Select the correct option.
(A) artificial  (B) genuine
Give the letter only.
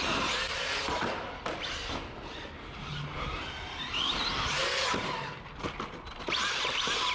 B